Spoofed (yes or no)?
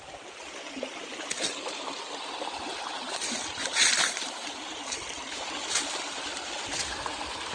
no